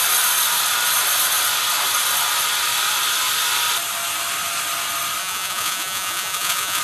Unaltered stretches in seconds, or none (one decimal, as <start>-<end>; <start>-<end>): 0.0-5.2